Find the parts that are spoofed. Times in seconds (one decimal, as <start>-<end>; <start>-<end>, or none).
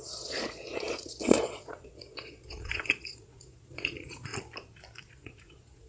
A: 0.0-4.3; 5.0-5.9